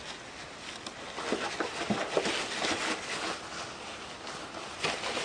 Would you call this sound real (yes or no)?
yes